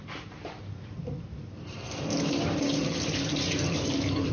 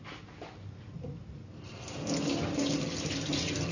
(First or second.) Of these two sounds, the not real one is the first